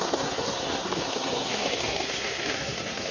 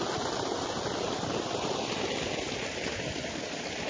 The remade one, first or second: first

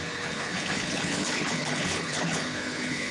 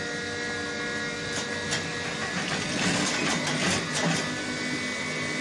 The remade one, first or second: first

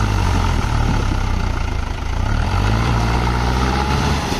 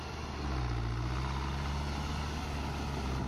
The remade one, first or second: first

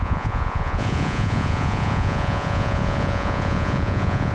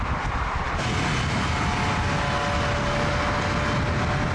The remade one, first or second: first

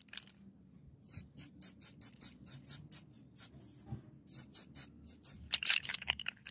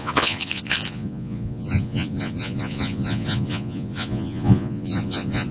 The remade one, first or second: second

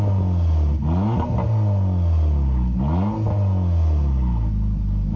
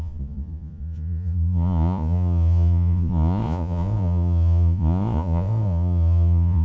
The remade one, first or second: second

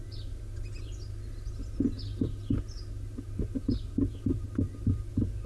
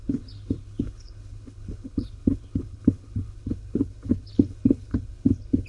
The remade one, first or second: second